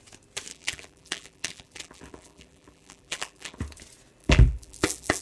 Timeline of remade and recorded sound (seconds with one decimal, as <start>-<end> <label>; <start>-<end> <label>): 0.0-0.5 recorded; 0.5-3.6 remade; 3.6-4.2 recorded; 4.2-5.2 remade